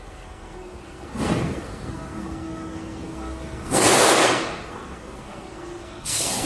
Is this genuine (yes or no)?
no